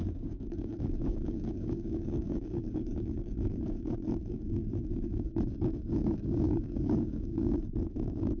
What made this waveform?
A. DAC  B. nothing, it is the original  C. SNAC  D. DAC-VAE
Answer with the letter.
A